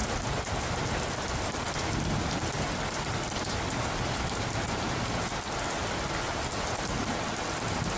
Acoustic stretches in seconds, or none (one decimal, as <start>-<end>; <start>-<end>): 0.0-8.0